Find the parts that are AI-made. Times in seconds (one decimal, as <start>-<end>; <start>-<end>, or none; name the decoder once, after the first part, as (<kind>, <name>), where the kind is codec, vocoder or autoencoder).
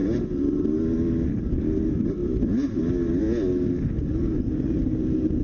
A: none